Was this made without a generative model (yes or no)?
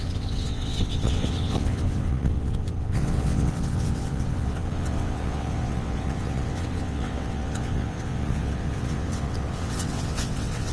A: no